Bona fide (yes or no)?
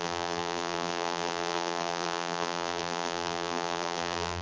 no